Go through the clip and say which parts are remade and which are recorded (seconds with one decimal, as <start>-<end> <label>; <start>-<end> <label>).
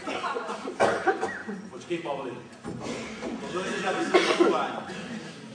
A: 0.0-5.5 recorded